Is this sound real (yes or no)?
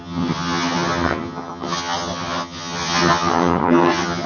no